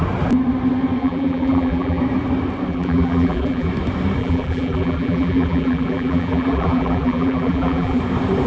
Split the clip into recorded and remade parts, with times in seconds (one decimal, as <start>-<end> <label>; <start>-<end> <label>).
0.0-1.0 recorded; 1.0-2.0 remade; 2.0-2.7 recorded; 2.7-3.7 remade; 3.7-4.2 recorded; 4.2-8.0 remade; 8.0-8.5 recorded